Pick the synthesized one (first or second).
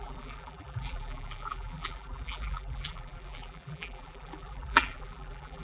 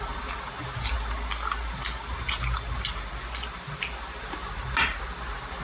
first